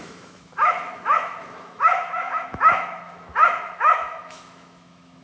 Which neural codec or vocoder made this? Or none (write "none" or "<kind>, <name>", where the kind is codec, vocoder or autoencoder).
autoencoder, DAC-VAE